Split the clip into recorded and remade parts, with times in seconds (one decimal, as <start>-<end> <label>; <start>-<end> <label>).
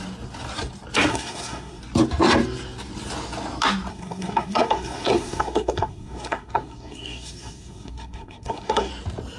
0.0-1.1 recorded; 1.1-1.8 remade; 1.8-3.9 recorded; 3.9-8.9 remade; 8.9-9.4 recorded